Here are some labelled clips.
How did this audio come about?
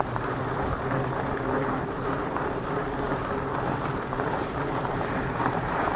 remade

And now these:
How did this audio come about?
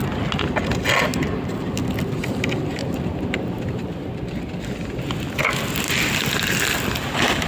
recorded